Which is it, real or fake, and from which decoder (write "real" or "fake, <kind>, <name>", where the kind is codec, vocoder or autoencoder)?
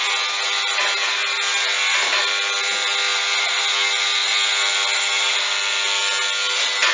real